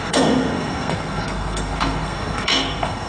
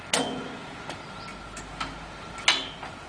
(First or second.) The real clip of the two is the second